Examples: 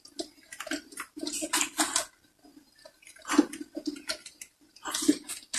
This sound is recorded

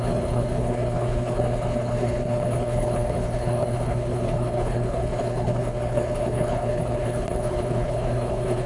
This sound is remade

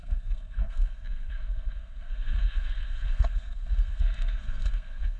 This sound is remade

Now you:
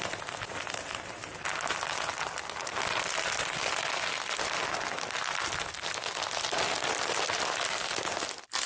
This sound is recorded